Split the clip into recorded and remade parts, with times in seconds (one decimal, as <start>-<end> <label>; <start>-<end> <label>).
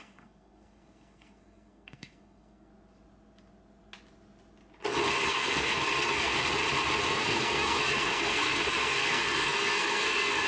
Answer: 0.0-2.7 remade; 2.7-5.1 recorded; 5.1-6.3 remade; 6.3-7.1 recorded; 7.1-10.5 remade